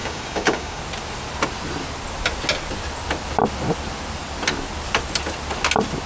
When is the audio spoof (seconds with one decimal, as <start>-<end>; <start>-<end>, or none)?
0.0-0.8

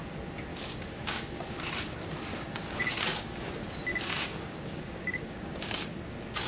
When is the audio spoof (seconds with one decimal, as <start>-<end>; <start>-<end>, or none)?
0.5-1.4; 2.3-3.5; 3.9-6.1

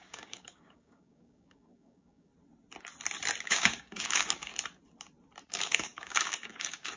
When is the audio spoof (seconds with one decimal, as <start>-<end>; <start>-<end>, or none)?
0.0-2.3; 3.4-4.5; 5.5-7.0

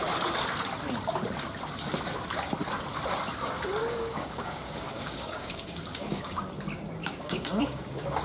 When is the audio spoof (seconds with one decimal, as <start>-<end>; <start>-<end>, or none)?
3.8-6.5; 7.0-8.2

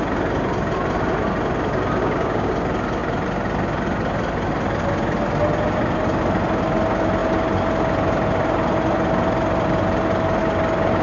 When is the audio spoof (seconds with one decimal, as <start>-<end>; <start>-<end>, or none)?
2.0-2.5

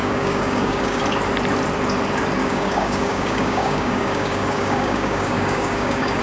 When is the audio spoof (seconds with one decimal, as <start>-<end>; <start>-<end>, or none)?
0.0-1.0; 2.4-6.2